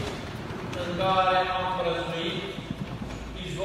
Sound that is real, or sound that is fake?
fake